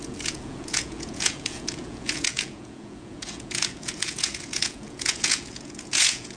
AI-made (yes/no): yes